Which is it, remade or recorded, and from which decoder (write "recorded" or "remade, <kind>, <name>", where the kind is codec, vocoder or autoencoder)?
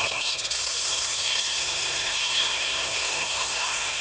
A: remade, codec, SNAC